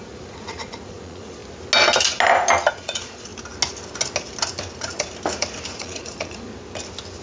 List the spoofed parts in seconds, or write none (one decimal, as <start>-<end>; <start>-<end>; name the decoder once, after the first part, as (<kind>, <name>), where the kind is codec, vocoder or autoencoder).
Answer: 0.0-1.4 (vocoder, Vocos); 2.7-3.3; 5.7-6.5